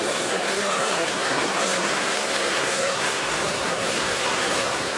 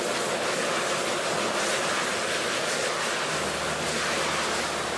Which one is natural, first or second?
second